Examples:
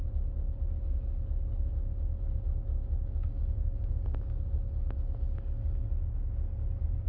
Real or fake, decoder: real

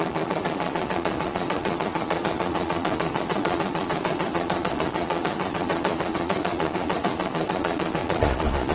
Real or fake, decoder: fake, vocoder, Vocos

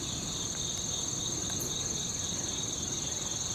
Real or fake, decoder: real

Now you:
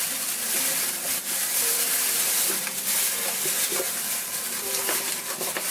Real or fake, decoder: real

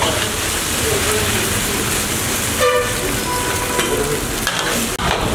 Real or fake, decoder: real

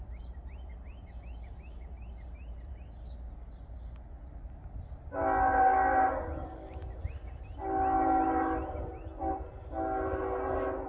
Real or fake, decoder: real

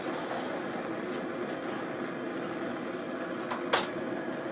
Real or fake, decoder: real